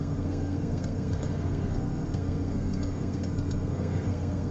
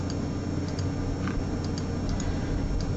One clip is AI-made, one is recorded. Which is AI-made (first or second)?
first